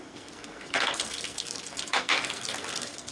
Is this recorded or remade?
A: remade